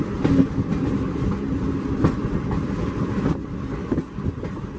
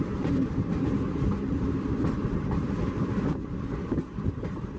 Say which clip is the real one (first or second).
first